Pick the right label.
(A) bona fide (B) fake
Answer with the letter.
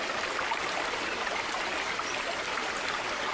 A